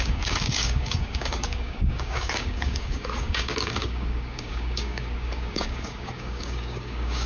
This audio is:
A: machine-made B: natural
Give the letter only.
A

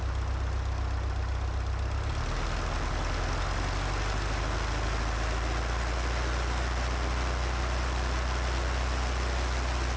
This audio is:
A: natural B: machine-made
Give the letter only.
A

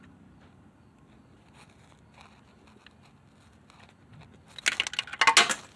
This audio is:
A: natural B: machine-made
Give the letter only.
A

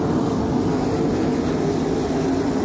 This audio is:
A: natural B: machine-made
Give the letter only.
A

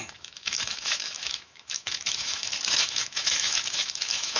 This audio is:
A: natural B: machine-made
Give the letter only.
B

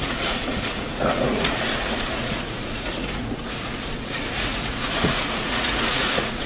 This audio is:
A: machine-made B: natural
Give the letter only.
A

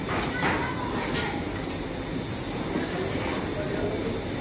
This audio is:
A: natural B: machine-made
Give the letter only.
A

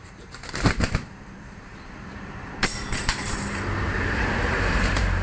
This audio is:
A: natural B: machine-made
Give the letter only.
B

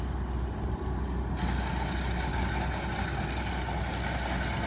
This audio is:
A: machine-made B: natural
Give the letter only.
B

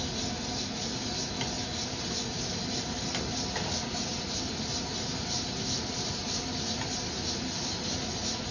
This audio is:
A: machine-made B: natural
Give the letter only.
B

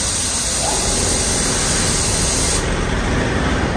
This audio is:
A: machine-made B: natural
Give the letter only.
B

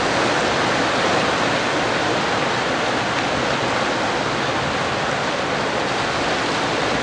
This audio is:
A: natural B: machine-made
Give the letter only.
A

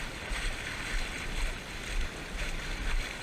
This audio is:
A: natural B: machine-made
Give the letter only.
A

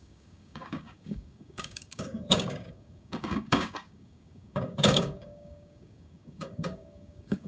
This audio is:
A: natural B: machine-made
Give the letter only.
B